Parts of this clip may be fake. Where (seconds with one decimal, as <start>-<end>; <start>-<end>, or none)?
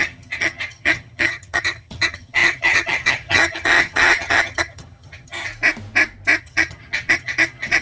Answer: 0.0-5.5; 6.4-7.8